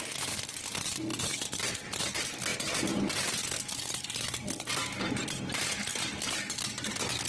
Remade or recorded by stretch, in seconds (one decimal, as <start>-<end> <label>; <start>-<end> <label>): 0.0-7.3 recorded